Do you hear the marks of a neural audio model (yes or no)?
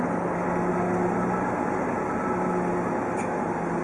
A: no